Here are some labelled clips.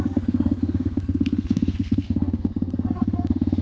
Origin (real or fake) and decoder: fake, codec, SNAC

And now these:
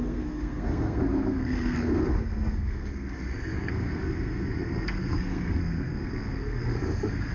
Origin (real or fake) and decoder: fake, codec, SNAC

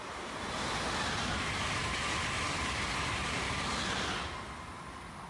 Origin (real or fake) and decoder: real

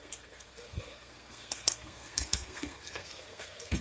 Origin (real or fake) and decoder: fake, codec, SNAC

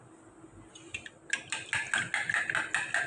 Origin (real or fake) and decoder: real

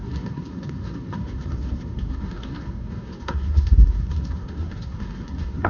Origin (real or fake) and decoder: fake, codec, SNAC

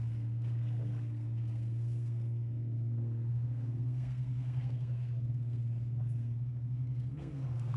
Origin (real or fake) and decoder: fake, codec, SNAC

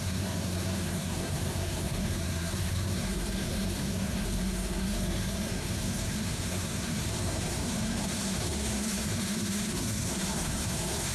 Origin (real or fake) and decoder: fake, codec, SNAC